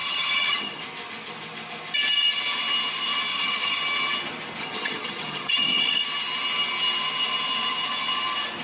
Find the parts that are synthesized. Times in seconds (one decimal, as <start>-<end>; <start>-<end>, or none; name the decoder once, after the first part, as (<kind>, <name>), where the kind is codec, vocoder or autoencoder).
0.0-0.8 (vocoder, HiFi-GAN); 3.3-3.8; 4.6-6.0